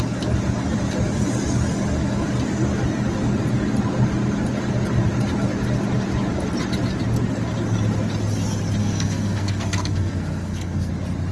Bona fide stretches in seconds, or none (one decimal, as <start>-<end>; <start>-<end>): 0.0-8.8; 10.9-11.3